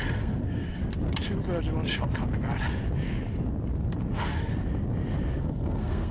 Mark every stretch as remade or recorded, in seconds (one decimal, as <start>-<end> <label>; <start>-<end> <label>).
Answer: 0.0-0.8 remade; 0.8-4.0 recorded; 4.0-4.5 remade; 4.5-5.4 recorded; 5.4-6.1 remade

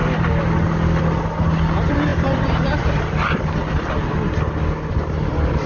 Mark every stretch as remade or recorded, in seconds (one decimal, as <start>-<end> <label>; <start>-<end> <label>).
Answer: 0.0-5.7 recorded